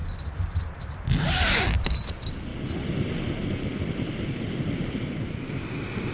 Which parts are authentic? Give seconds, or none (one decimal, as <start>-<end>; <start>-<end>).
0.0-6.1